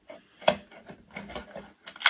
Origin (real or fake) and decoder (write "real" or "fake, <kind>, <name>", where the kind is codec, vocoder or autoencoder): real